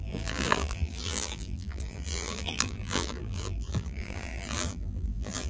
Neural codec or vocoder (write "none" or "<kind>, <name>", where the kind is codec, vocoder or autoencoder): vocoder, BigVGAN v2